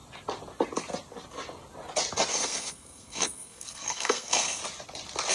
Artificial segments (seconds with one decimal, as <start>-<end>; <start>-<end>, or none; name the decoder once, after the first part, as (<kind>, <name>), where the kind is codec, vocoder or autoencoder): 2.3-4.6 (codec, SNAC)